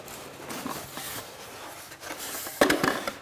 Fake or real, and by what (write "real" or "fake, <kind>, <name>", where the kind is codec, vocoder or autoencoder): real